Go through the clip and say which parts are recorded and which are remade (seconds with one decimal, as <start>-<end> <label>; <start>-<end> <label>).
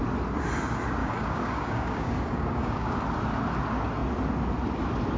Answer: 0.0-1.0 recorded; 1.0-3.0 remade; 3.0-5.2 recorded